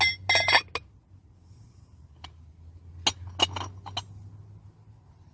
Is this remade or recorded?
recorded